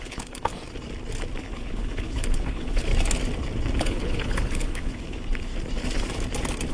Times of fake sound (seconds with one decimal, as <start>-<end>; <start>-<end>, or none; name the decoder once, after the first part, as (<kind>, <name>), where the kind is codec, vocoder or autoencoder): 0.0-0.5 (codec, HILCodec); 1.4-2.9; 3.8-5.5